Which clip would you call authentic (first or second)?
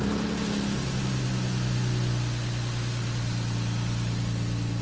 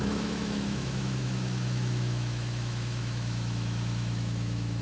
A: first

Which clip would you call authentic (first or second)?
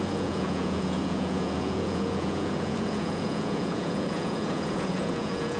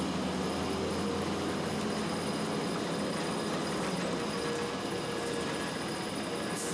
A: second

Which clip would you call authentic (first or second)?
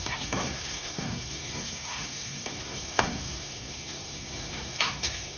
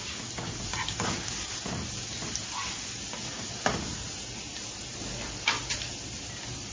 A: second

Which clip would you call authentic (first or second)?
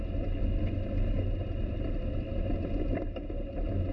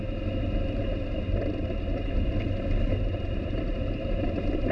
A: first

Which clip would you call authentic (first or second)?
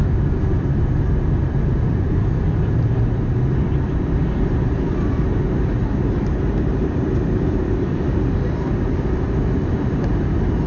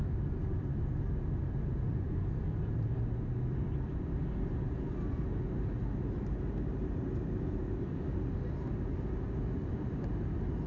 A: second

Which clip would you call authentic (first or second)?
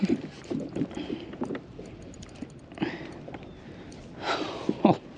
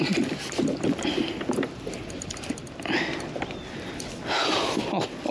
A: second